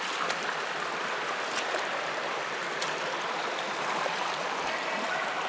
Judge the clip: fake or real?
real